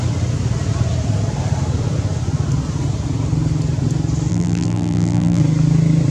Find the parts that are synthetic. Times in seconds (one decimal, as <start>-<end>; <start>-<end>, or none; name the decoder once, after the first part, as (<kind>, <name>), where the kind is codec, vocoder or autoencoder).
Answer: 4.3-5.4 (vocoder, BigVGAN v2)